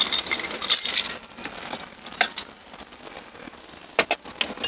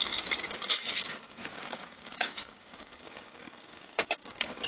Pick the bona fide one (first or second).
first